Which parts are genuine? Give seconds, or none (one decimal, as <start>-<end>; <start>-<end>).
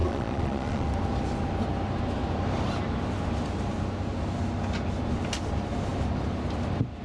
0.9-7.0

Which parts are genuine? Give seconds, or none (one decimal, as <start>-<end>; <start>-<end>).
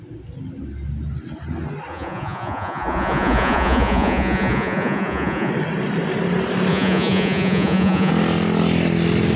0.0-1.9; 5.5-6.7; 8.1-9.4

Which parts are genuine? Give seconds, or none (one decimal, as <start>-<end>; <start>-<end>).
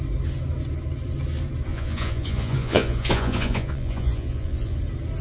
0.0-1.7; 4.8-5.2